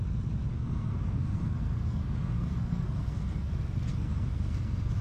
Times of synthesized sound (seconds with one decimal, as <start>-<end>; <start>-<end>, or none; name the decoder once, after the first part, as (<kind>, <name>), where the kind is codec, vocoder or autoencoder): 0.5-3.5 (codec, SNAC); 3.9-5.0